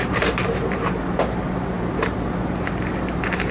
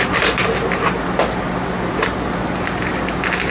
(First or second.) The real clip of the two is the second